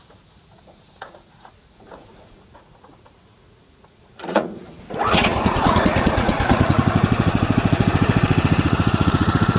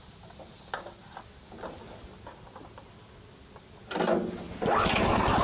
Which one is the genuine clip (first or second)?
second